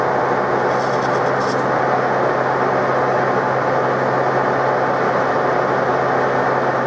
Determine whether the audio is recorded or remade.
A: recorded